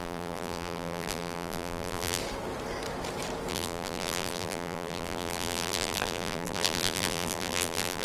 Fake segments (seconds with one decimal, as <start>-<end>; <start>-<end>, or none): 0.0-2.2; 3.5-8.0